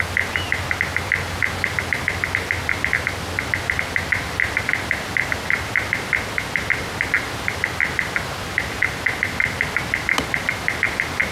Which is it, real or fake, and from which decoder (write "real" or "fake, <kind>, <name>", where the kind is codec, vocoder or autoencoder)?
real